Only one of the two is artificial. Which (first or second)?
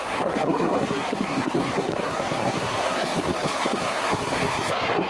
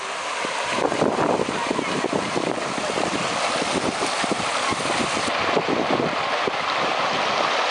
first